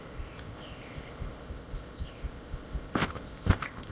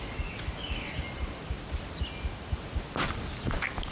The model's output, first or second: first